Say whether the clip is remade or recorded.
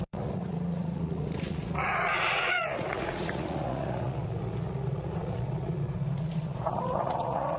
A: remade